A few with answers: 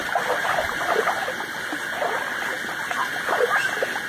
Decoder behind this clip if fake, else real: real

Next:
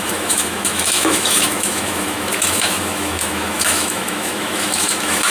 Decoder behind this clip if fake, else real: fake, autoencoder, DAC-VAE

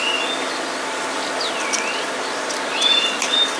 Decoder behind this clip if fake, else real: real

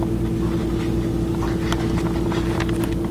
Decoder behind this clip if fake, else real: real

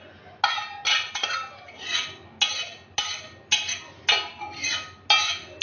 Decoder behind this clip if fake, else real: real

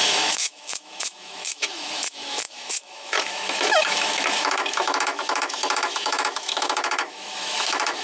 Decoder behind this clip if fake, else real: fake, autoencoder, DAC-VAE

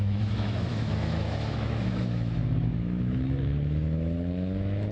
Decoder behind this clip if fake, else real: fake, autoencoder, DAC-VAE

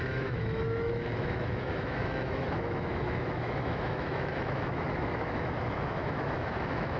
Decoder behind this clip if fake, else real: fake, autoencoder, DAC-VAE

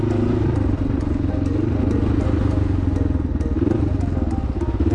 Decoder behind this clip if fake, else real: real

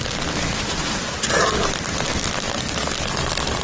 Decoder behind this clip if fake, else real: real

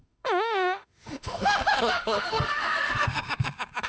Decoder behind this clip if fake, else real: fake, autoencoder, DAC-VAE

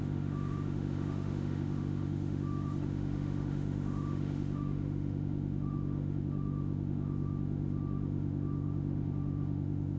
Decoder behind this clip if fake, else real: fake, autoencoder, DAC-VAE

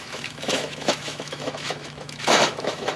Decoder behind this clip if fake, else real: fake, autoencoder, DAC-VAE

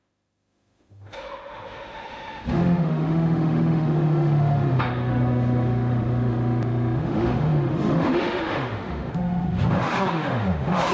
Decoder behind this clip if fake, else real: fake, autoencoder, DAC-VAE